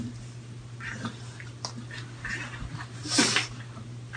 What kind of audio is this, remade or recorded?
recorded